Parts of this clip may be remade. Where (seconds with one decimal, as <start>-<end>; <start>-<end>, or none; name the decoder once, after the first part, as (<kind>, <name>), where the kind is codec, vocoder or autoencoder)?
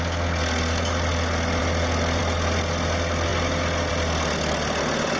none